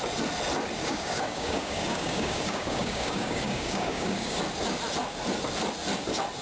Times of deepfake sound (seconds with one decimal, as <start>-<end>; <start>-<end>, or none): 0.8-4.4